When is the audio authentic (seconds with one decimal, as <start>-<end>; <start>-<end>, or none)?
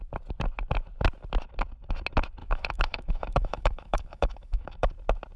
0.0-2.4; 4.9-5.4